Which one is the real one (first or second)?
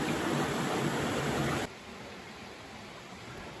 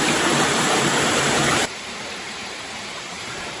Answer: first